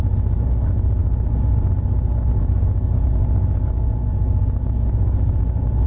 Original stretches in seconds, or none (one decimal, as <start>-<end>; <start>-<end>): 0.0-5.9

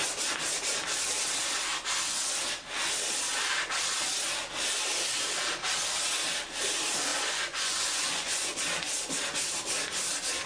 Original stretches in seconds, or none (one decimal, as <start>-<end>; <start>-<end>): 0.0-7.1; 8.6-10.5

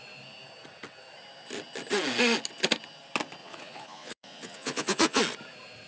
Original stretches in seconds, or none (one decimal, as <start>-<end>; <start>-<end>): 0.0-3.4; 5.2-5.9

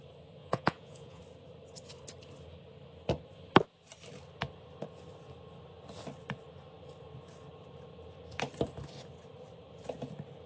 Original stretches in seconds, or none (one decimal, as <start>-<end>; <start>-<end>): 0.0-0.4; 1.2-10.5

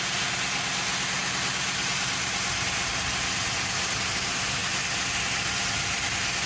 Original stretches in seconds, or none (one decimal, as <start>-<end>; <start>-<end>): 0.0-6.5